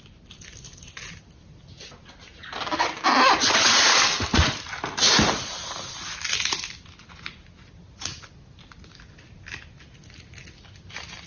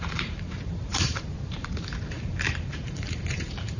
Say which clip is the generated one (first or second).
second